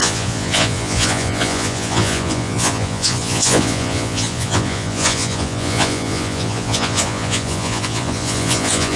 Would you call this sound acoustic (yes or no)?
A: no